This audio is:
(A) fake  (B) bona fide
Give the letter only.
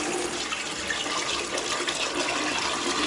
B